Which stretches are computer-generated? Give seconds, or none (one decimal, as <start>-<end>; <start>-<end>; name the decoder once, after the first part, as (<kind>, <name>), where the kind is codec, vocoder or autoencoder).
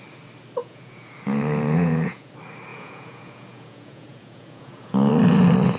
0.6-2.3 (vocoder, Vocos); 2.7-5.1